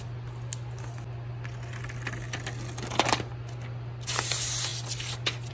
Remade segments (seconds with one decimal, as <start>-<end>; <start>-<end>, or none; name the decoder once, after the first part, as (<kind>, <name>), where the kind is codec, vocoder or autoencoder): none